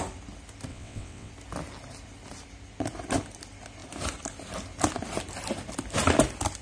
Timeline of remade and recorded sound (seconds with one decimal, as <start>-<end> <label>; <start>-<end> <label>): 0.0-0.7 recorded; 0.7-1.3 remade; 1.3-6.6 recorded